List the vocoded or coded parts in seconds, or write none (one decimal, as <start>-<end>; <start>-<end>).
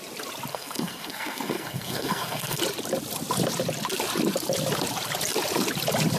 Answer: 0.5-2.6